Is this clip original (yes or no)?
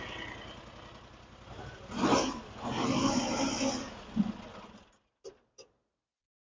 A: yes